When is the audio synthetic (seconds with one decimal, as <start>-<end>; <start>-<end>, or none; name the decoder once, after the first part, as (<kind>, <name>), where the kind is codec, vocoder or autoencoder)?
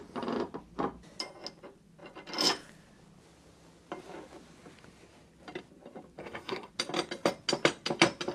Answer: 6.2-6.7 (codec, SNAC)